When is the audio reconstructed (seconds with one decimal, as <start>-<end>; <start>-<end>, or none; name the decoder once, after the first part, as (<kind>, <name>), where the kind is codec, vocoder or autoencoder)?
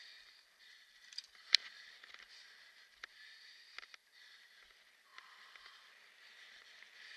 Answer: 0.0-1.6 (vocoder, BigVGAN v2); 2.2-5.1